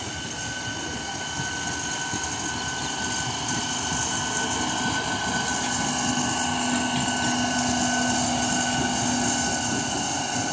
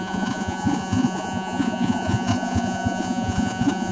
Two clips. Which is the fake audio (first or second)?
second